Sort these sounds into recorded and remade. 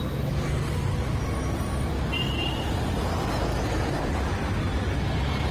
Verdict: recorded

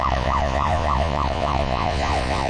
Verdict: remade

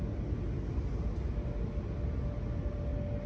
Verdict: recorded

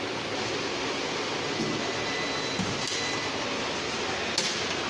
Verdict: recorded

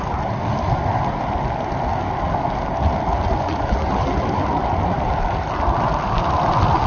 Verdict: recorded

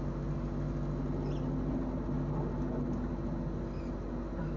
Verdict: recorded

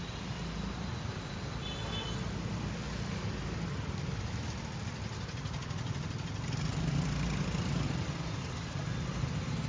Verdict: recorded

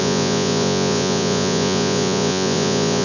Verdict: remade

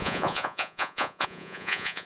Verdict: remade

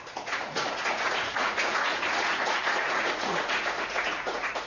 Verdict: remade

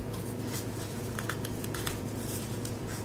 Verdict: remade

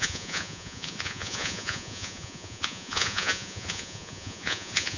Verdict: remade